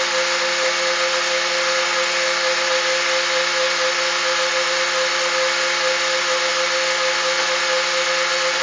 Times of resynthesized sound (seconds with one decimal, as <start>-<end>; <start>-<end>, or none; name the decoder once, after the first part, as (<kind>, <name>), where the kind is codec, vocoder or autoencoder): none